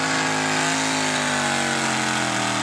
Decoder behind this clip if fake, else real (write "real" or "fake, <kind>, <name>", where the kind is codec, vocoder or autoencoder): real